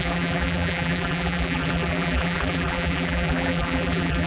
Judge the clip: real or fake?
fake